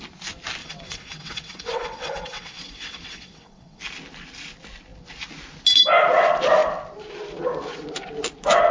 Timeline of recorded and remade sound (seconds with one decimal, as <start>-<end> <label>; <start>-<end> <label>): 0.0-0.6 recorded; 0.6-3.8 remade; 3.8-8.7 recorded